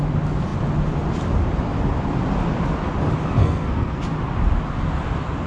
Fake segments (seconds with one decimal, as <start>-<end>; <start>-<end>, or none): 3.4-4.0